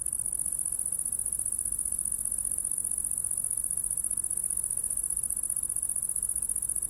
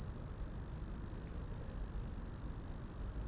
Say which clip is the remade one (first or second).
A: second